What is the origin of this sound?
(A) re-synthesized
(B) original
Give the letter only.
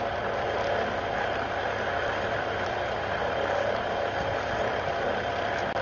B